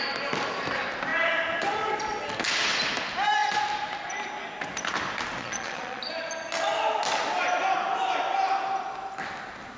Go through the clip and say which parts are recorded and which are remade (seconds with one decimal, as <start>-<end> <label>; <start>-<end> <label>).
0.0-5.4 recorded; 5.4-6.0 remade; 6.0-9.8 recorded